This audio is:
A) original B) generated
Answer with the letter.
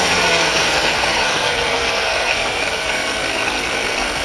B